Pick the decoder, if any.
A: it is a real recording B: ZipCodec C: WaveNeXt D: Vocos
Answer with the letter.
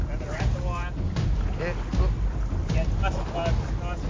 A